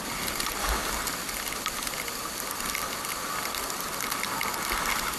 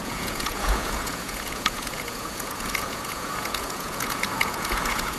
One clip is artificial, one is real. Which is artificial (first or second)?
second